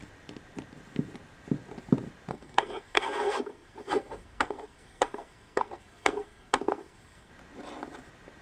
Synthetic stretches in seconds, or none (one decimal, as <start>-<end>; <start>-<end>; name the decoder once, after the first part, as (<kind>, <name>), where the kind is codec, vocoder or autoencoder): 2.3-7.3 (codec, SNAC)